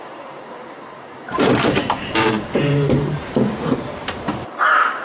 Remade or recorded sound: remade